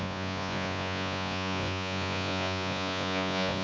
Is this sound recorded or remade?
remade